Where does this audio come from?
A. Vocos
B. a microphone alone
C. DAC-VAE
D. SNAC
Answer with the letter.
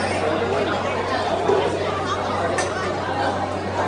B